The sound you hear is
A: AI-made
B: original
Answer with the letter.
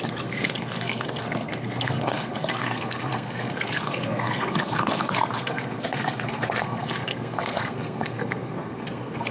A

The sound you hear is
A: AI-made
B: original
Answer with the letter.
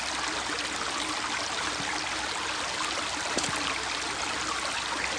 B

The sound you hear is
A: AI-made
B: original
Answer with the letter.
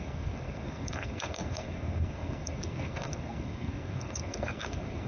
A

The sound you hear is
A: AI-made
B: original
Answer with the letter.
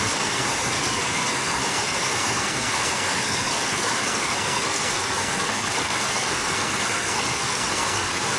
A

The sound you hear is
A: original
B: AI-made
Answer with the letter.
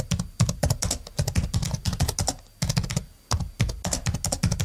A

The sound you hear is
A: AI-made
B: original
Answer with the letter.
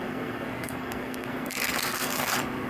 A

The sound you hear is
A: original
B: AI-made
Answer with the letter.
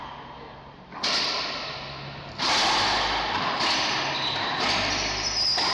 A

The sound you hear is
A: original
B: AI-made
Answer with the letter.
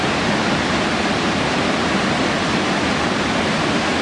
A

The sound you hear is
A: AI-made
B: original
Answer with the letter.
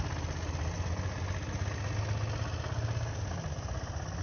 B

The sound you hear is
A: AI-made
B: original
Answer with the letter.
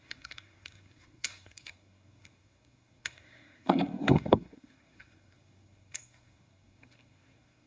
A